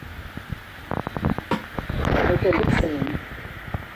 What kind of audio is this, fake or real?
real